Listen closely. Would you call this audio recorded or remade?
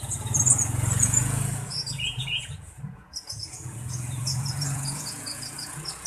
remade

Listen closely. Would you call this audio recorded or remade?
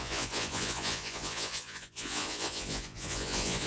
remade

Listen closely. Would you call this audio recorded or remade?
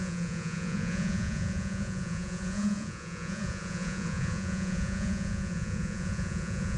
remade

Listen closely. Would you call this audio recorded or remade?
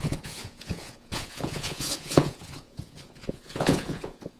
remade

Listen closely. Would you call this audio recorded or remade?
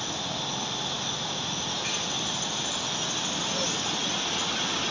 recorded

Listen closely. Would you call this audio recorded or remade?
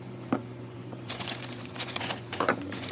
remade